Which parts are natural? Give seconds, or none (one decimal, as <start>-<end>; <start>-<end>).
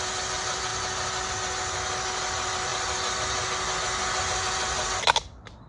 0.0-5.7